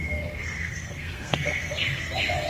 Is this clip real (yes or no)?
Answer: no